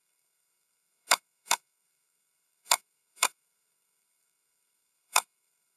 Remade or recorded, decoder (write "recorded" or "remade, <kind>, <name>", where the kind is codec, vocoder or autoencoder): remade, codec, SNAC